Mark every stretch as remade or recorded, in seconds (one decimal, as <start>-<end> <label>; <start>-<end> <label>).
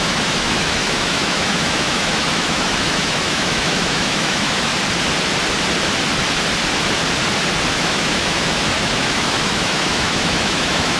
0.0-4.7 remade; 4.7-7.7 recorded; 7.7-11.0 remade